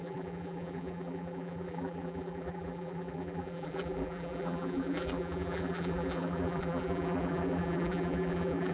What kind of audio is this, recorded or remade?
remade